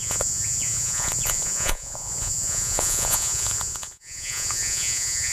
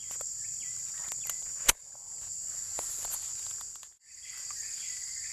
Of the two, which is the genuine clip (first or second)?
second